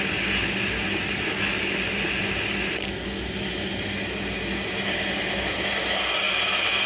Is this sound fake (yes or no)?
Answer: no